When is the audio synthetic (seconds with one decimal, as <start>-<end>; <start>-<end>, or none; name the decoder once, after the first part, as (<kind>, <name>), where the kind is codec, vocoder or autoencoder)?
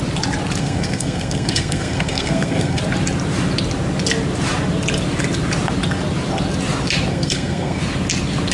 0.6-2.8 (codec, SNAC); 7.1-7.8